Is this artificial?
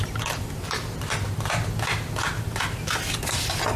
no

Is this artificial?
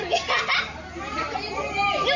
no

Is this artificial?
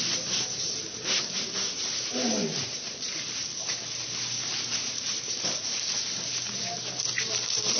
yes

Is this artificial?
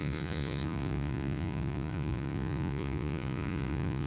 yes